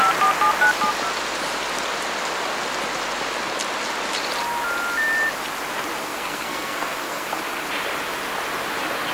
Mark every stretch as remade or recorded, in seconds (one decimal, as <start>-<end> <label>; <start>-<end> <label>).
0.0-6.0 recorded; 6.0-7.4 remade; 7.4-9.1 recorded

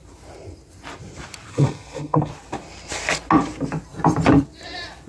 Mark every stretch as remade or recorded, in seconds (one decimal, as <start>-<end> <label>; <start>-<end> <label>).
0.0-1.5 recorded; 1.5-2.3 remade; 2.3-5.1 recorded

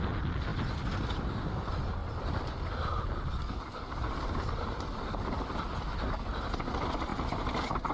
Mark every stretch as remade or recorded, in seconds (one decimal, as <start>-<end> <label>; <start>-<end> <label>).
0.0-3.4 recorded; 3.4-4.3 remade; 4.3-7.9 recorded

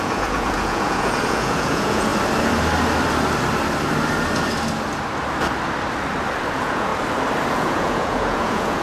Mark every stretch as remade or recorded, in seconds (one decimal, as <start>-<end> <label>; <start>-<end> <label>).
0.0-2.1 remade; 2.1-6.5 recorded; 6.5-6.9 remade; 6.9-7.5 recorded; 7.5-8.8 remade